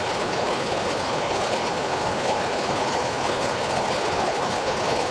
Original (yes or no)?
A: no